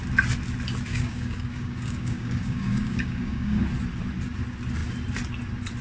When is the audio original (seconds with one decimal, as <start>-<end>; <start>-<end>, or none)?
0.0-0.9; 3.6-5.8